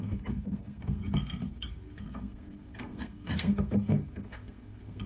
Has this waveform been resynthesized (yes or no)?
yes